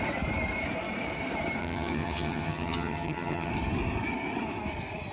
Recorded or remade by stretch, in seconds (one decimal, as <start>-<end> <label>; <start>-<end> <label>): 0.0-1.6 recorded; 1.6-3.5 remade; 3.5-5.1 recorded